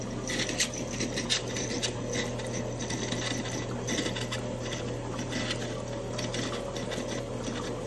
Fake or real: real